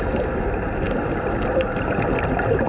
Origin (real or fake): real